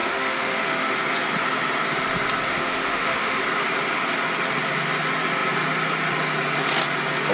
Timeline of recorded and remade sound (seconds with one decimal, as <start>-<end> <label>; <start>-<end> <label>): 0.0-0.9 remade; 0.9-2.5 recorded; 2.5-3.4 remade; 3.4-7.3 recorded